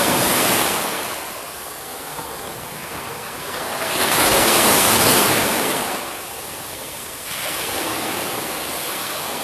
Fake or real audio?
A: fake